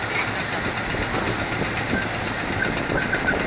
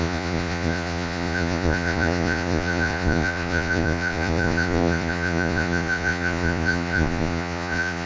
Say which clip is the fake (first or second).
second